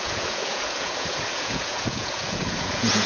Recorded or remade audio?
remade